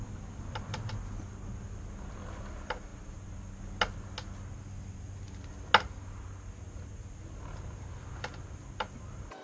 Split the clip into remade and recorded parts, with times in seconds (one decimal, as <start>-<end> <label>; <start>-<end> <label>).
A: 0.0-9.4 recorded